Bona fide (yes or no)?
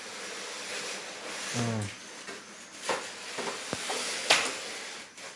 yes